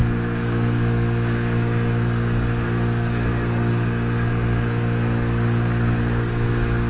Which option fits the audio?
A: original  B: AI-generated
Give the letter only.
B